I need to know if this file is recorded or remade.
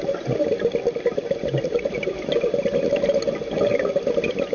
recorded